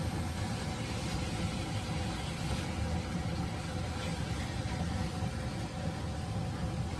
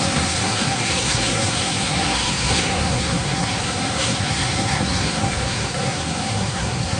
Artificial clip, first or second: second